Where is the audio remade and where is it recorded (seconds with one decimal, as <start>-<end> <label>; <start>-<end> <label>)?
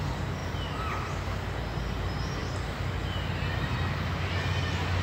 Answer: 0.0-5.0 recorded